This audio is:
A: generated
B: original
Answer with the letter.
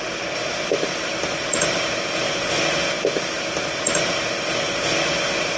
B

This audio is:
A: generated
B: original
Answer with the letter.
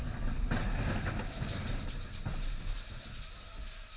B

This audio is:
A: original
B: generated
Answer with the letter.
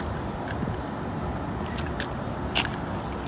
A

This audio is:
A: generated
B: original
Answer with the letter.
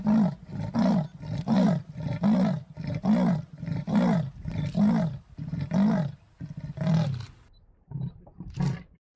B